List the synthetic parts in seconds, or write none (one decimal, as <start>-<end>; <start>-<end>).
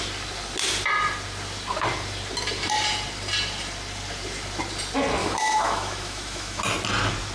5.2-6.6